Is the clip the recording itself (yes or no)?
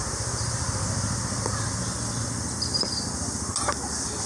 yes